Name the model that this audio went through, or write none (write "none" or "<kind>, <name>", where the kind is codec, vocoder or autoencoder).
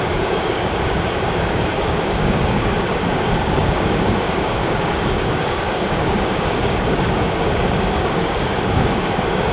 codec, DAC